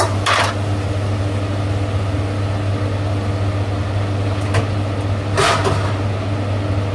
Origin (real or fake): real